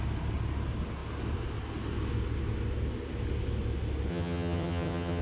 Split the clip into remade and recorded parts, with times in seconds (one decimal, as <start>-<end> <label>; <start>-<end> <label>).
0.0-4.1 recorded; 4.1-5.2 remade